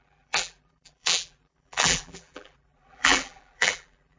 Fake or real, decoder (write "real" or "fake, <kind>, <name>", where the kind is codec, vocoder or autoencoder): fake, vocoder, BigVGAN v2